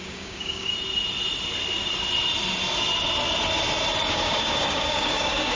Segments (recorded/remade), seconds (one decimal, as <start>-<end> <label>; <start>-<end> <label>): 0.0-0.7 remade; 0.7-4.1 recorded; 4.1-5.6 remade